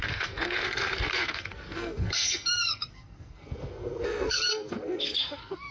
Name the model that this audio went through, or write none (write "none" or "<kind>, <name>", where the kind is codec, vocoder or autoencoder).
codec, SNAC